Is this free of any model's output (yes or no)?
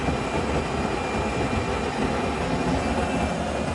yes